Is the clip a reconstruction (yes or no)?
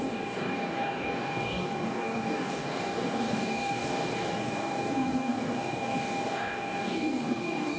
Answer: yes